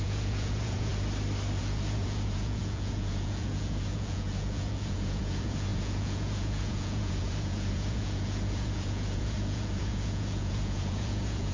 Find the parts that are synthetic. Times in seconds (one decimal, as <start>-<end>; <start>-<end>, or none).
0.0-0.9; 1.6-11.5

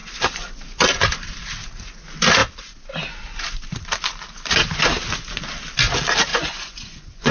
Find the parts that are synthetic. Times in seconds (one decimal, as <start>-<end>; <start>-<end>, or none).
6.3-7.3